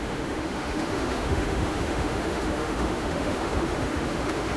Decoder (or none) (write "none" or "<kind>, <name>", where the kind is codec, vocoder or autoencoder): autoencoder, DAC-VAE